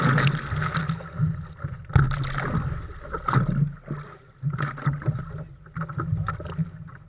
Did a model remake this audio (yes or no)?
no